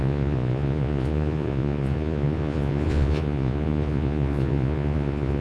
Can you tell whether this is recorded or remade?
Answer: remade